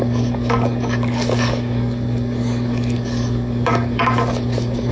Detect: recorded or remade remade